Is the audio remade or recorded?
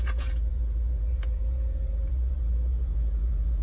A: remade